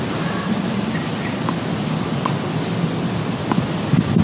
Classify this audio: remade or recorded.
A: recorded